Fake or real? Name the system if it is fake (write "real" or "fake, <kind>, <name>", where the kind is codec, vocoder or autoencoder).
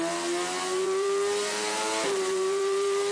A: fake, vocoder, BigVGAN v2